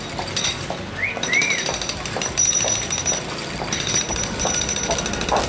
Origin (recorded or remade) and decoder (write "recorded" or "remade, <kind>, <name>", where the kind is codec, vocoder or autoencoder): recorded